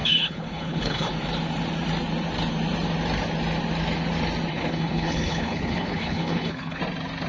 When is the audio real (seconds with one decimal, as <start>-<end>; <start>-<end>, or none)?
1.1-4.5; 6.8-7.3

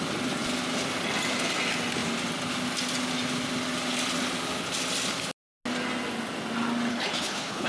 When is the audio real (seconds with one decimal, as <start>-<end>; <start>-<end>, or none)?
0.0-6.9

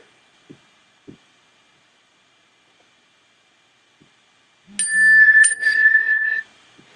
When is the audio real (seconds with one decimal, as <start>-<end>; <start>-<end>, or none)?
0.0-5.2; 6.4-7.0

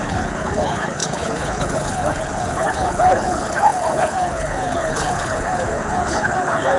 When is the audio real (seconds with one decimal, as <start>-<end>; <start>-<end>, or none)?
none

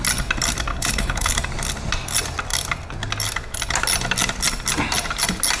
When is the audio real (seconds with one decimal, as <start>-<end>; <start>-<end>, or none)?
0.0-0.7; 1.3-5.6

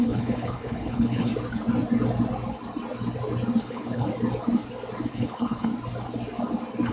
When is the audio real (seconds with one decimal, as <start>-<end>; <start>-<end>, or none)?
1.3-3.6; 4.1-5.1; 5.7-6.9

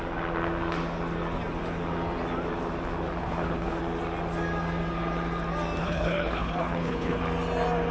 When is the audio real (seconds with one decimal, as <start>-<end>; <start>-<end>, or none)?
0.0-3.2; 3.8-5.8; 7.2-7.9